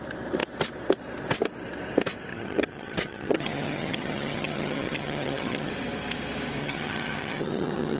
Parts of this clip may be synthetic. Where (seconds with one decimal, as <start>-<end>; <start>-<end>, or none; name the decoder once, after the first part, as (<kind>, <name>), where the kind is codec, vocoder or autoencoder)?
2.3-5.7 (vocoder, HiFi-GAN); 6.6-8.0